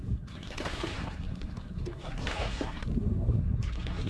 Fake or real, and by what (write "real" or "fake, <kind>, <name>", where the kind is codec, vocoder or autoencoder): fake, codec, SNAC